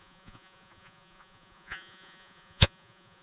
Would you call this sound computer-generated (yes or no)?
yes